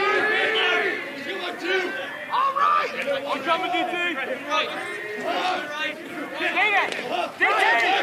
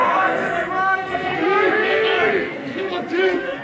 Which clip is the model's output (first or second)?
second